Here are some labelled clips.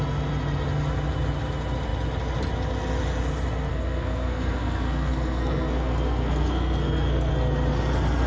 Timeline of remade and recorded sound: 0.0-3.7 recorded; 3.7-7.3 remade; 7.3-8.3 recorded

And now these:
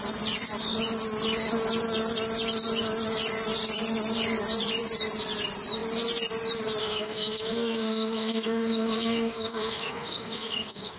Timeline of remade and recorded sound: 0.0-6.8 recorded; 6.8-11.0 remade

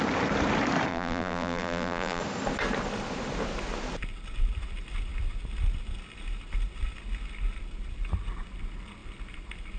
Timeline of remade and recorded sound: 0.0-0.9 recorded; 0.9-2.2 remade; 2.2-9.8 recorded

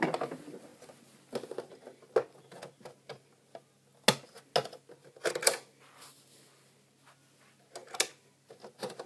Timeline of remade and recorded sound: 0.0-9.1 recorded

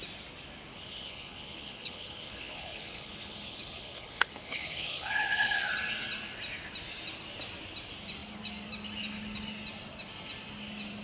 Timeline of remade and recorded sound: 0.0-0.7 recorded; 0.7-5.7 remade; 5.7-11.0 recorded

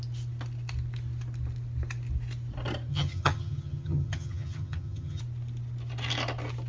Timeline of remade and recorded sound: 0.0-2.9 recorded; 2.9-5.2 remade; 5.2-6.7 recorded

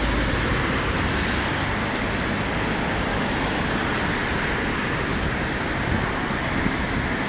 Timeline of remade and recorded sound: 0.0-3.1 recorded; 3.1-3.6 remade; 3.6-7.3 recorded

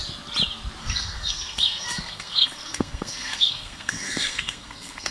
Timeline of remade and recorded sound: 0.0-0.8 recorded; 0.8-5.1 remade